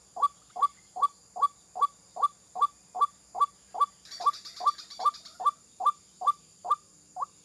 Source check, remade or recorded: recorded